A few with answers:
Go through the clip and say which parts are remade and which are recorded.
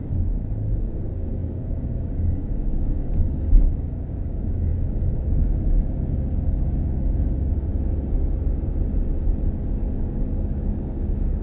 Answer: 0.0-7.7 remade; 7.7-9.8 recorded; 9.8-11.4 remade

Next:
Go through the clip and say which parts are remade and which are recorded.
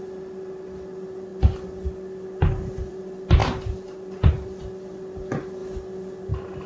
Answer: 0.0-6.7 recorded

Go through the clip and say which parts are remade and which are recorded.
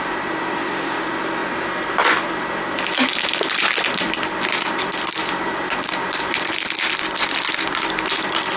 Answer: 0.0-8.6 recorded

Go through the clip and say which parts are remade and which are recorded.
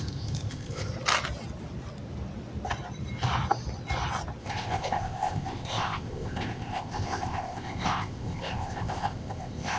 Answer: 0.0-0.9 remade; 0.9-4.4 recorded; 4.4-9.8 remade